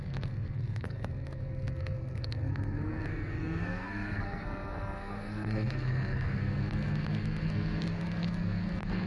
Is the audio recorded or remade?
remade